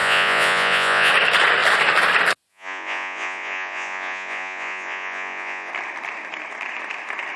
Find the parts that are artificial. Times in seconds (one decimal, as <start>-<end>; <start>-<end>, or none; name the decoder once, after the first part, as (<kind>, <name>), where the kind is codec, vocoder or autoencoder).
0.0-1.1 (vocoder, Vocos); 2.5-5.7